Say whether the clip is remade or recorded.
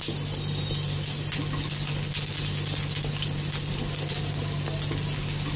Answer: recorded